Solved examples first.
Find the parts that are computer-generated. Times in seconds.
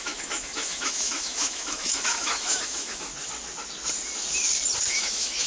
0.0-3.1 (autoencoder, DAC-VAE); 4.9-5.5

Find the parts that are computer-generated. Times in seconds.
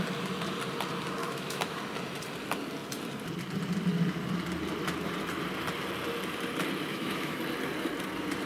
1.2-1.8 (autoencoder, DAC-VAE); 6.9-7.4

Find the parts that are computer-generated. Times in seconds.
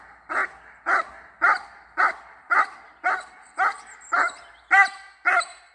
none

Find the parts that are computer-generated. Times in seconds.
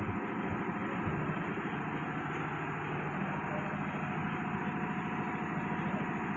none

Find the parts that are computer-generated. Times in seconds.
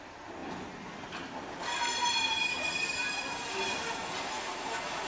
none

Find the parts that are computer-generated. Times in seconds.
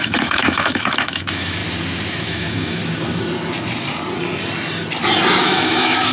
0.0-1.6 (autoencoder, DAC-VAE); 2.1-2.8; 5.4-6.1